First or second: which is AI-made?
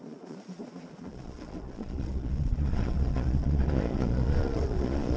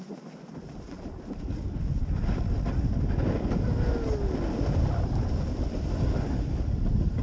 first